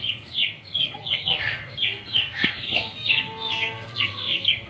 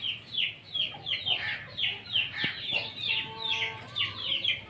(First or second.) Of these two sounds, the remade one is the first